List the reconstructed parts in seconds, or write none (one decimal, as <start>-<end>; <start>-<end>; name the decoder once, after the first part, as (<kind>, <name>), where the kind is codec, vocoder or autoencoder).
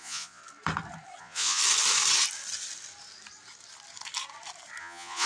0.0-0.4 (vocoder, Vocos); 1.2-1.6; 4.8-5.3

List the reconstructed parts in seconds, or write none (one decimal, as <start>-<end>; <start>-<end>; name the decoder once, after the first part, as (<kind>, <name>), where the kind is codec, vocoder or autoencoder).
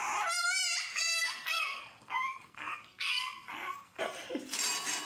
0.9-4.0 (codec, SNAC)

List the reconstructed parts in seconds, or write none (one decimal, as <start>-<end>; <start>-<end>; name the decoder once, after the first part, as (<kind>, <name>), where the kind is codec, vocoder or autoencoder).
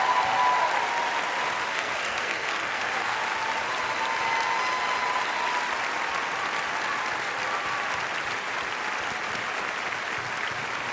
1.7-3.2 (codec, SNAC)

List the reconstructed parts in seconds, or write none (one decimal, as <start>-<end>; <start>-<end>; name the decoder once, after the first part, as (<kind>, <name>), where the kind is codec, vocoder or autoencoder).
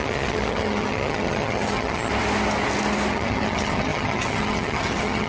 0.0-2.1 (vocoder, HiFi-GAN); 3.1-5.3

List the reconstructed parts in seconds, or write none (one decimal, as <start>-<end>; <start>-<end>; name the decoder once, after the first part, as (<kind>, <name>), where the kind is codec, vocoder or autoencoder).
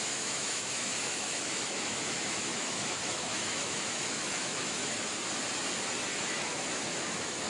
0.0-4.8 (autoencoder, DAC-VAE); 6.2-7.5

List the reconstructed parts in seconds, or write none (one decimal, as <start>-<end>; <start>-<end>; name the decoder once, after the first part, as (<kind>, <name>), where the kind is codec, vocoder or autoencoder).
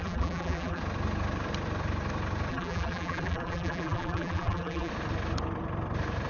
0.0-0.8 (vocoder, BigVGAN v2); 2.5-4.9